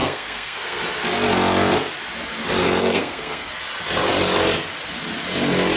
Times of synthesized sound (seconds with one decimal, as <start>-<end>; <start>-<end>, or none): 0.0-0.8; 2.6-3.5